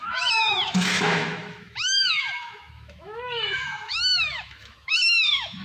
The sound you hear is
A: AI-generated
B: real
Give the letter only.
A